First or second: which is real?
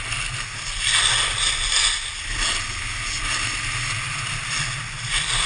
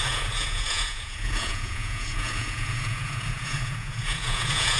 first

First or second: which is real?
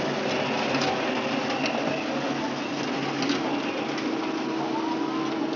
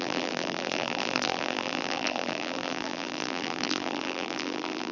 first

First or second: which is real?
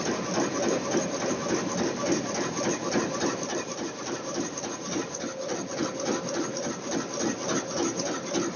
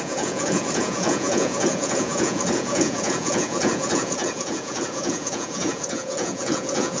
first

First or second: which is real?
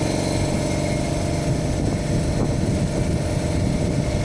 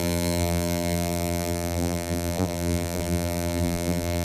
first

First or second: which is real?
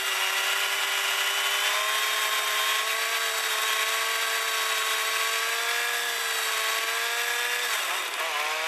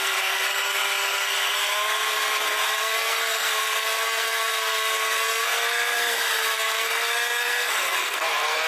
first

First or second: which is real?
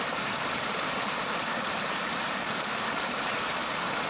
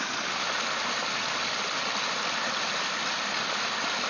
second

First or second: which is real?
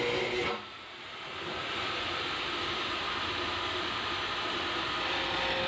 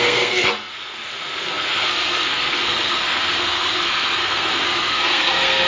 first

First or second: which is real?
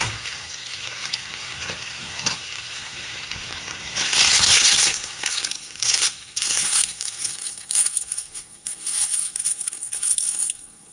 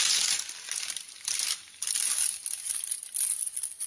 second